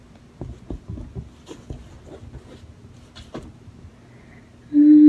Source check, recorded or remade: recorded